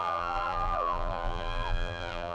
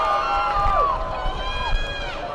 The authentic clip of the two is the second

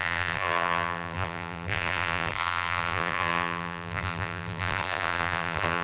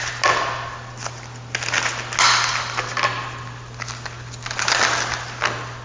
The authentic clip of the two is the second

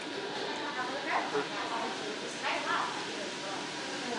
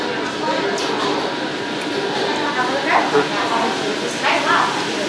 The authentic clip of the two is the second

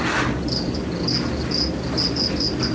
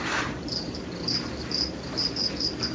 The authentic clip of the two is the first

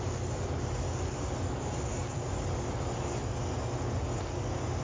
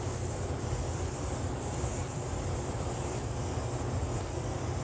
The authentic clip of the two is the first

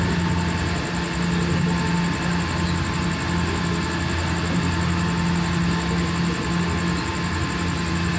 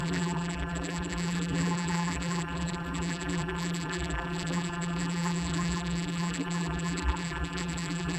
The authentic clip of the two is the first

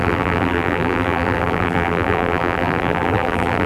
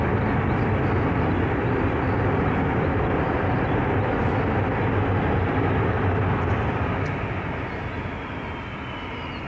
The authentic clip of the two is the second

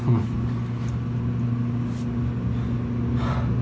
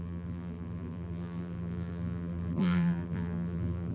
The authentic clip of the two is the first